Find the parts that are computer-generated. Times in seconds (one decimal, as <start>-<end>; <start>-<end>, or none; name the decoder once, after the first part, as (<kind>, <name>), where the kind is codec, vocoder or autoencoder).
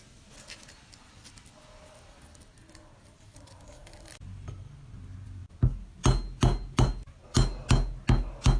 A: none